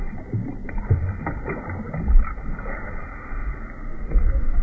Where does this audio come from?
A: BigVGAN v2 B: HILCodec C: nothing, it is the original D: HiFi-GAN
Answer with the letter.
C